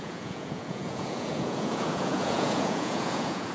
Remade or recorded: remade